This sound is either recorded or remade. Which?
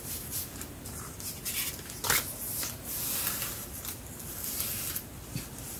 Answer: recorded